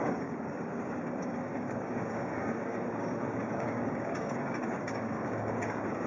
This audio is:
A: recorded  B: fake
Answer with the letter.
B